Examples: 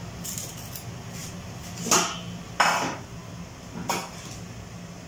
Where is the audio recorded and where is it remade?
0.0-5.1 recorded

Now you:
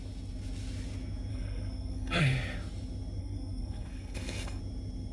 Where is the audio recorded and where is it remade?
0.0-1.3 recorded; 1.3-2.2 remade; 2.2-3.2 recorded; 3.2-4.6 remade; 4.6-5.1 recorded

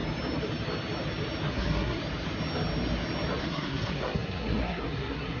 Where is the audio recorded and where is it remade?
0.0-1.5 recorded; 1.5-2.0 remade; 2.0-3.4 recorded; 3.4-5.4 remade

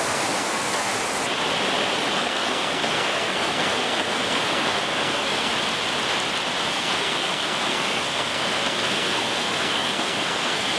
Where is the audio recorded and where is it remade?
0.0-0.9 remade; 0.9-2.1 recorded; 2.1-5.5 remade; 5.5-6.7 recorded; 6.7-10.8 remade

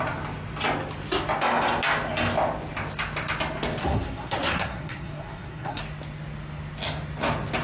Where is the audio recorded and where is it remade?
0.0-3.8 recorded; 3.8-5.8 remade; 5.8-7.6 recorded